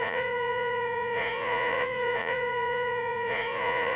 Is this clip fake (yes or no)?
yes